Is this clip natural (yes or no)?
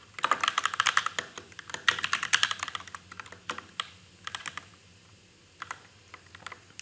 yes